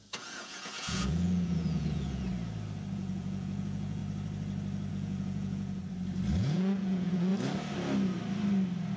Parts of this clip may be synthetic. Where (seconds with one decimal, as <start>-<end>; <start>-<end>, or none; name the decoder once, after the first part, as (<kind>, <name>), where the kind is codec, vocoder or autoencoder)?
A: 0.0-2.3 (vocoder, Vocos); 2.9-4.0; 4.9-5.8; 6.4-7.3